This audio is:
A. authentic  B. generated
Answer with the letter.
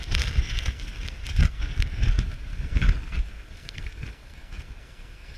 B